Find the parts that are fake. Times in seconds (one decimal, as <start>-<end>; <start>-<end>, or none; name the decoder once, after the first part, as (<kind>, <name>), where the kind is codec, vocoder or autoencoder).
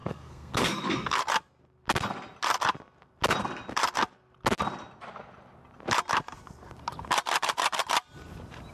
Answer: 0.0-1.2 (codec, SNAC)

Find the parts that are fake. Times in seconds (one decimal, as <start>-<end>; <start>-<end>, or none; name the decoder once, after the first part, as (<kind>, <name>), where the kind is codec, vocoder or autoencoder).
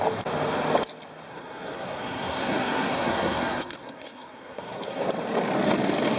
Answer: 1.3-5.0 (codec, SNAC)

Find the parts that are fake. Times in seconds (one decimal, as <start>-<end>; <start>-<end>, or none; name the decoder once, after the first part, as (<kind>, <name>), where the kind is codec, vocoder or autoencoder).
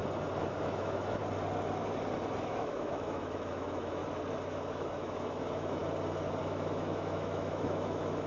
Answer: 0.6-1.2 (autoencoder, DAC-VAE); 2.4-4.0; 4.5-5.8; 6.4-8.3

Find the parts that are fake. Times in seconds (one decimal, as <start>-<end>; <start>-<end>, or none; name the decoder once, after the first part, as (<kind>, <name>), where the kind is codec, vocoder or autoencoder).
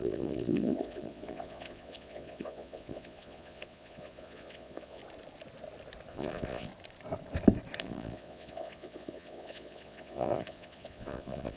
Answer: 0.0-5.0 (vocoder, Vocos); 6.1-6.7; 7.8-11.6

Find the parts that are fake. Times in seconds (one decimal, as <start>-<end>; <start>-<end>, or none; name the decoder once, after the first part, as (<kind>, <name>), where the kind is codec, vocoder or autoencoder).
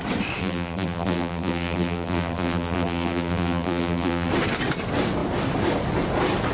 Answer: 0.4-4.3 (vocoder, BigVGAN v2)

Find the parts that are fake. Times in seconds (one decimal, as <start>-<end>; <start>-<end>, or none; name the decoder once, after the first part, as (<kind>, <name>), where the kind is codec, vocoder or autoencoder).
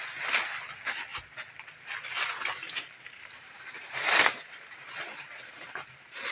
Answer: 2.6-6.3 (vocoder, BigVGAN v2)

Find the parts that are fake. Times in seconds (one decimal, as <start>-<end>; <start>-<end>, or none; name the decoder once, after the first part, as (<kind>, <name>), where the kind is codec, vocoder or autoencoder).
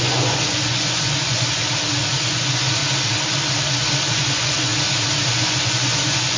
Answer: 0.0-1.6 (vocoder, Vocos); 2.1-2.8; 4.1-4.7; 5.3-6.4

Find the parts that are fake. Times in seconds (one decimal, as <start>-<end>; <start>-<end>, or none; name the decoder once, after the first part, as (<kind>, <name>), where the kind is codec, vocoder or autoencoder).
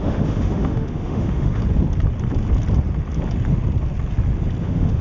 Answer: 0.0-1.6 (autoencoder, DAC-VAE); 4.6-5.0